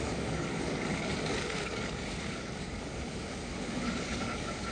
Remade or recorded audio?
remade